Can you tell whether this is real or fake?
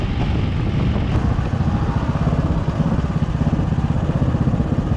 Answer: real